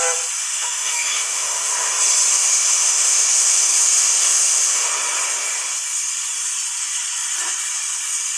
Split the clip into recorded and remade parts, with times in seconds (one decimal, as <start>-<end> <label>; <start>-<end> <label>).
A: 0.0-0.4 recorded; 0.4-1.9 remade; 1.9-2.3 recorded; 2.3-4.9 remade; 4.9-8.4 recorded